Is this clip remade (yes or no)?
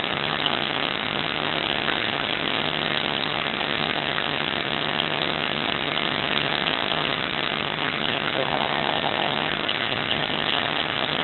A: yes